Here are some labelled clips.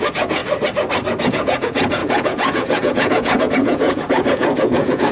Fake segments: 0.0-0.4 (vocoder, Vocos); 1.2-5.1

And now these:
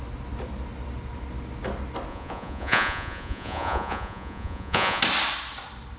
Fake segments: 2.1-5.0 (vocoder, Vocos)